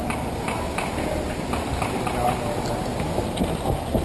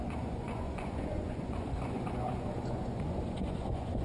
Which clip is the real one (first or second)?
first